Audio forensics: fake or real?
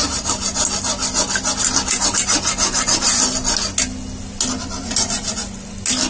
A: real